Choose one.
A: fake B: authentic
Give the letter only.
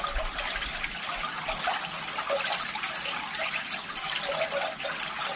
B